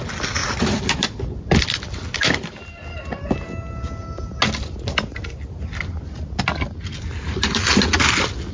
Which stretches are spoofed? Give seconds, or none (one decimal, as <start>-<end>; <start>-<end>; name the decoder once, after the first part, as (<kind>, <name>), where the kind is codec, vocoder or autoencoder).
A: none